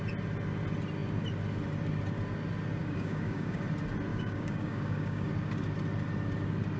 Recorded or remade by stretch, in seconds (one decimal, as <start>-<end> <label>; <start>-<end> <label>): 0.0-2.8 recorded; 2.8-3.6 remade; 3.6-4.1 recorded; 4.1-5.3 remade; 5.3-6.8 recorded